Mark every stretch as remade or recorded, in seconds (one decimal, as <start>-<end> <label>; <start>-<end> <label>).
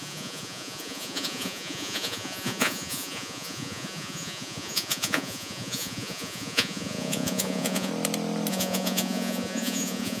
0.0-7.9 remade; 7.9-8.5 recorded; 8.5-10.2 remade